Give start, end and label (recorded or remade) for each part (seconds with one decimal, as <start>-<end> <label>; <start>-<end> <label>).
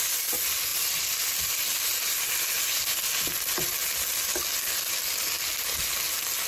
0.0-6.5 recorded